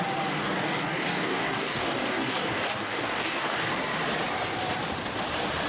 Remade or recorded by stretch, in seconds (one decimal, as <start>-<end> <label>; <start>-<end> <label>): 0.0-0.4 recorded; 0.4-3.8 remade; 3.8-5.7 recorded